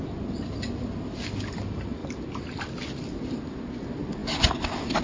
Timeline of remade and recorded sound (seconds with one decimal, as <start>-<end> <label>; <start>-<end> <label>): 0.0-5.0 recorded

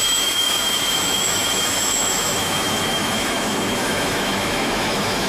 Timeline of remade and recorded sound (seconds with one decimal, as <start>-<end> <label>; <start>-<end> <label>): 0.0-5.3 remade

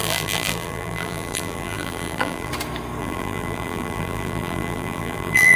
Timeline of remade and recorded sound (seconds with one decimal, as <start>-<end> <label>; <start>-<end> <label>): 0.0-2.5 remade; 2.5-3.0 recorded; 3.0-5.6 remade